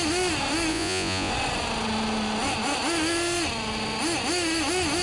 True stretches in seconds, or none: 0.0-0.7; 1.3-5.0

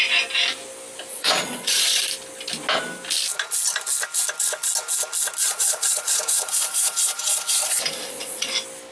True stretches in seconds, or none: 0.0-1.1; 2.0-5.4; 8.5-8.9

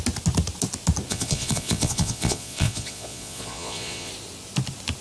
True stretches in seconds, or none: 0.0-1.1; 4.1-5.0